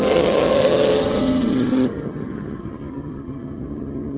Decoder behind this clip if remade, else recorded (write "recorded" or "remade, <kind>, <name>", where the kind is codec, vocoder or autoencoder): remade, vocoder, HiFi-GAN